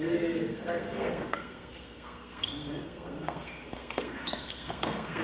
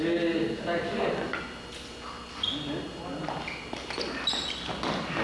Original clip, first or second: second